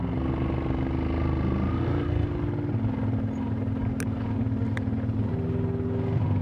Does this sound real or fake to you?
real